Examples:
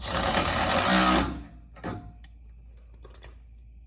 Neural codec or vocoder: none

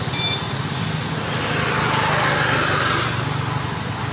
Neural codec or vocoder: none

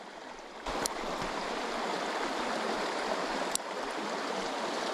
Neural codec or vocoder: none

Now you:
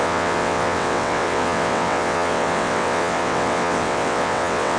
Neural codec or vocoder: vocoder, WaveNeXt